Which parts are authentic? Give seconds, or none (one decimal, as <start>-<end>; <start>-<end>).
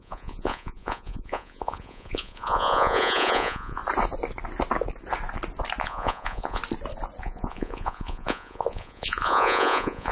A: 3.8-5.8; 6.6-7.2